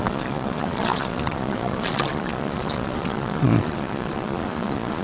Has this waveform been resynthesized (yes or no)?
yes